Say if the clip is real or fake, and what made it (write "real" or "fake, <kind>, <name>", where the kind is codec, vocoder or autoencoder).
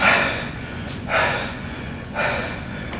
fake, vocoder, Vocos